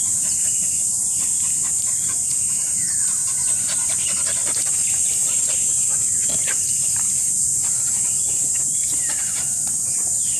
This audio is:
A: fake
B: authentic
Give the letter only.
A